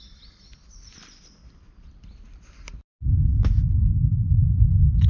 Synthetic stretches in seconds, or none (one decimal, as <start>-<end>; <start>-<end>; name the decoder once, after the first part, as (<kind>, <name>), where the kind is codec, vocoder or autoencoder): none